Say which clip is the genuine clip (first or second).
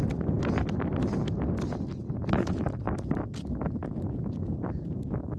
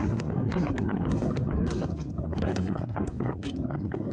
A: first